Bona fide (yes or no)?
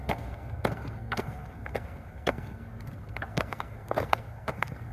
no